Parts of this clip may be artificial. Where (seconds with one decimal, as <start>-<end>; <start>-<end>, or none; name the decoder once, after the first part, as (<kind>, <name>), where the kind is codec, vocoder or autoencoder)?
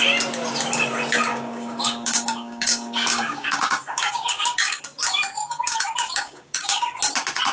1.3-4.8 (codec, DAC); 5.4-7.0